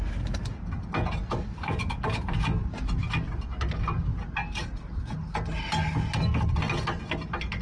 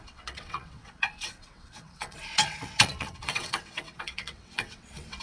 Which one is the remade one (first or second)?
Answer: second